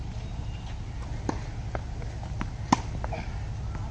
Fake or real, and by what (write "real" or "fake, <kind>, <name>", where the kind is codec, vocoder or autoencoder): real